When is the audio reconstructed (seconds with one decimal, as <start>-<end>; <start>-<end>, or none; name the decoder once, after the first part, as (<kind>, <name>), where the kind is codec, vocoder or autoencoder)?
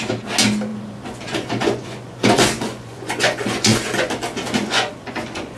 0.7-4.1 (vocoder, Vocos); 4.6-5.6